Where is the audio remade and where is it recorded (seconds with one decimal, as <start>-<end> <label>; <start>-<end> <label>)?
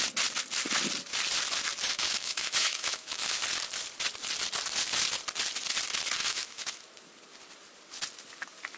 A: 0.0-1.9 recorded; 1.9-3.4 remade; 3.4-6.2 recorded; 6.2-6.8 remade; 6.8-8.8 recorded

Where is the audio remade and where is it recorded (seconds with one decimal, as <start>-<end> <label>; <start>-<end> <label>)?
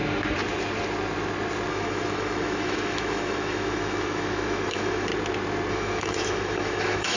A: 0.0-1.7 recorded; 1.7-5.1 remade; 5.1-5.7 recorded; 5.7-7.2 remade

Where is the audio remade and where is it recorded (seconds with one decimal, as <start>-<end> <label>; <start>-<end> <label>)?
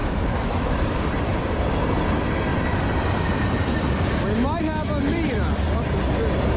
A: 0.0-1.1 remade; 1.1-6.6 recorded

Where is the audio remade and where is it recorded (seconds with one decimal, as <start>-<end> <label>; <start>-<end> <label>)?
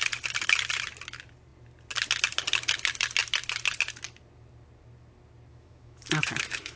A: 0.0-5.5 recorded; 5.5-6.8 remade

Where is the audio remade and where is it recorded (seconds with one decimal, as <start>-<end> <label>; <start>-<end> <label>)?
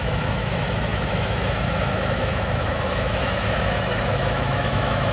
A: 0.0-5.1 remade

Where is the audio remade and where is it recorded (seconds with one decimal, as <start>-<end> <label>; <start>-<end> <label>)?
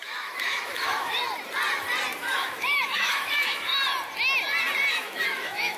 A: 0.0-1.2 remade; 1.2-2.2 recorded; 2.2-3.7 remade; 3.7-4.9 recorded; 4.9-5.8 remade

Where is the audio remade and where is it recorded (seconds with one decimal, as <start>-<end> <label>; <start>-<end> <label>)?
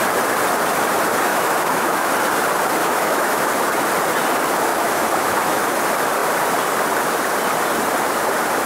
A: 0.0-1.3 recorded; 1.3-2.1 remade; 2.1-2.8 recorded; 2.8-3.4 remade; 3.4-4.7 recorded; 4.7-5.6 remade; 5.6-8.7 recorded